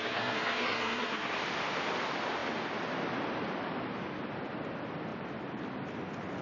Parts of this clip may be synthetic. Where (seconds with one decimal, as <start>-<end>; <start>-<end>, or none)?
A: 0.0-1.3